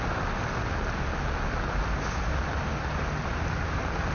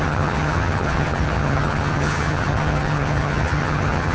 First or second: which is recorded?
first